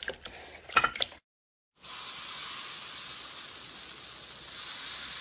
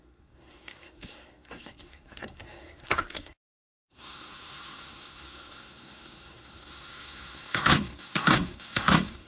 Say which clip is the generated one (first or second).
second